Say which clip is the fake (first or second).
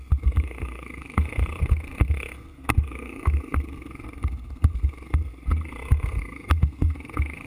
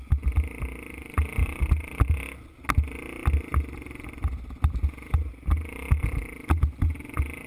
first